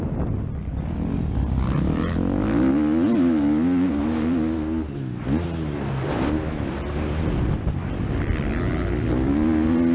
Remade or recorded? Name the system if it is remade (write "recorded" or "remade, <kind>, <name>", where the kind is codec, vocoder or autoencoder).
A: recorded